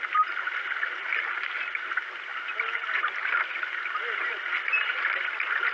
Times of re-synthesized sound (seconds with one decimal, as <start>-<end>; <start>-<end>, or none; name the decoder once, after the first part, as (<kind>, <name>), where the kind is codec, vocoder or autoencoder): none